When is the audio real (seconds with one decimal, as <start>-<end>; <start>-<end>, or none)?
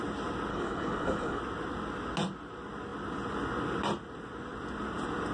0.0-0.5; 1.4-5.3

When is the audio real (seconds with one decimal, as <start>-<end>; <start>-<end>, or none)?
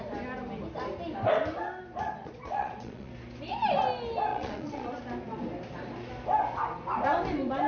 0.0-2.2; 3.1-4.3; 5.0-7.7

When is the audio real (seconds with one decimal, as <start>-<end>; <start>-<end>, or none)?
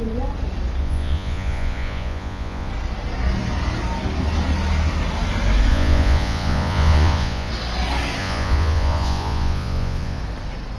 0.0-0.8; 2.7-5.7; 7.5-8.2; 10.2-10.8